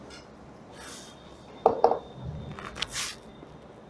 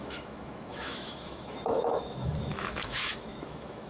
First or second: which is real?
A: first